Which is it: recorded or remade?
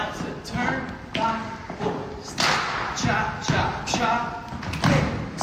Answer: recorded